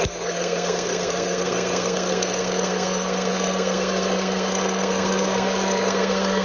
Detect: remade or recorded remade